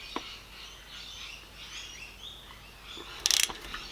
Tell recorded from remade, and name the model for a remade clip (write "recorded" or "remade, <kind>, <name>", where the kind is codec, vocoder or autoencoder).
recorded